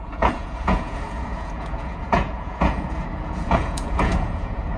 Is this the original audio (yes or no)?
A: no